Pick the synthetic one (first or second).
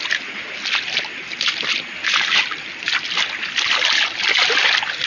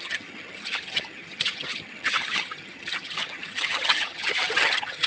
second